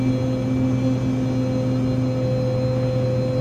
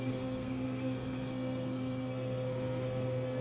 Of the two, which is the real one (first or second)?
first